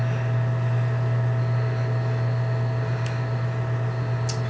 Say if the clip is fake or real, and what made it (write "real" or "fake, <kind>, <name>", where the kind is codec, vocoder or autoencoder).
real